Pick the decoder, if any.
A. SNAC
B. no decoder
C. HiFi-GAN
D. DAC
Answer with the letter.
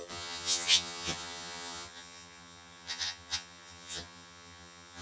C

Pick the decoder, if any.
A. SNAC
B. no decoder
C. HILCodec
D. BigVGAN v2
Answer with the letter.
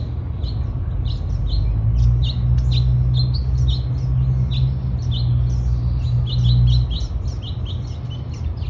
B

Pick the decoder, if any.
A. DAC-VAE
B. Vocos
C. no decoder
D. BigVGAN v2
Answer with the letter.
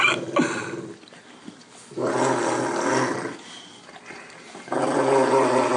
C